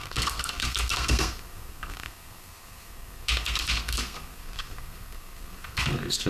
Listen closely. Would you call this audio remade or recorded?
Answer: remade